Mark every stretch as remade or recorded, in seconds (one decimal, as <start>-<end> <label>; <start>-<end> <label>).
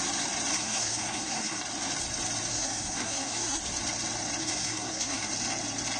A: 0.0-0.5 recorded; 0.5-1.6 remade; 1.6-2.5 recorded; 2.5-3.6 remade; 3.6-4.4 recorded; 4.4-5.3 remade; 5.3-6.0 recorded